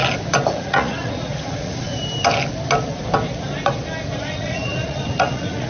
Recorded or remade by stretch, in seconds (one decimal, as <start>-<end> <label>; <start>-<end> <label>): 0.0-0.5 recorded; 0.5-1.9 remade; 1.9-4.2 recorded; 4.2-5.7 remade